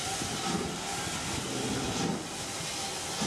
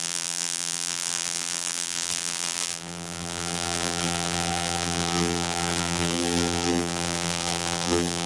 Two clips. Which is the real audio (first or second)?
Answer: first